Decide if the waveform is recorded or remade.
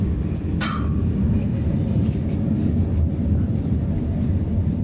recorded